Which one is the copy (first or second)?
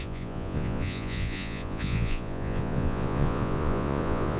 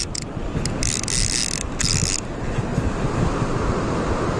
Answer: first